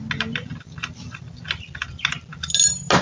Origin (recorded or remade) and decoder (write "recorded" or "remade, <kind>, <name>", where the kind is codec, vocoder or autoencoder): recorded